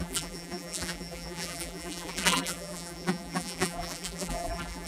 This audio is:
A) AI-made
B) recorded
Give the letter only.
A